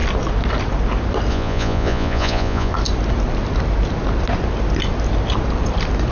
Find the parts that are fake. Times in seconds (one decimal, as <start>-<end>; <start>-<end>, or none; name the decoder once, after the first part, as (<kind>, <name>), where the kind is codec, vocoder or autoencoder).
1.3-2.7 (vocoder, Vocos)